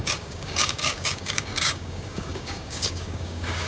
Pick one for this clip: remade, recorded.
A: remade